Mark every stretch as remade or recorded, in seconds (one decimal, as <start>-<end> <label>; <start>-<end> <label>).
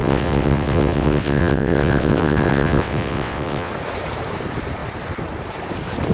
0.0-3.7 remade; 3.7-6.1 recorded